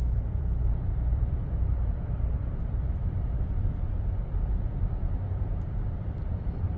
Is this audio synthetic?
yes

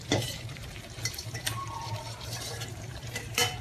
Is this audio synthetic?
yes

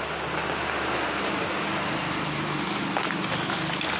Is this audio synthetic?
no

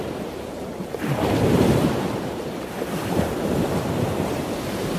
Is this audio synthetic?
yes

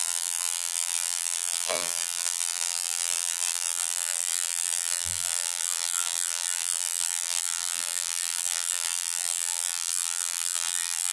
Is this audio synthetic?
yes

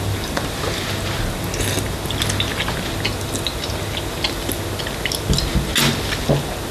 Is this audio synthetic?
no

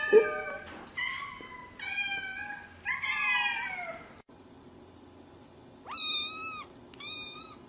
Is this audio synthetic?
no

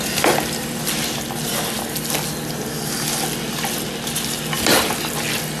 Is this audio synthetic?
no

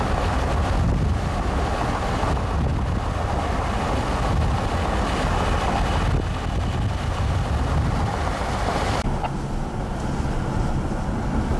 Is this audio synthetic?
no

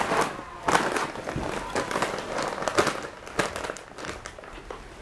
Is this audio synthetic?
no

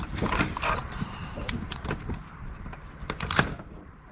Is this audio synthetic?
yes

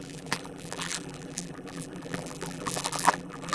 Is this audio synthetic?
yes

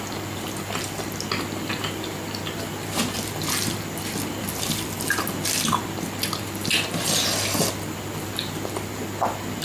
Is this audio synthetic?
no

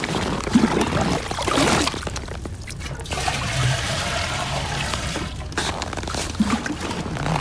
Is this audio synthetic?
yes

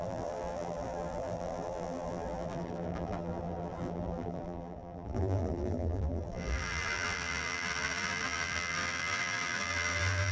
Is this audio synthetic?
yes